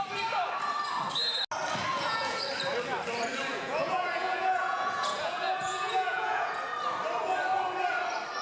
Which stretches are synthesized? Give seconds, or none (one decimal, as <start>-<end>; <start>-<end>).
1.9-2.4; 3.5-6.6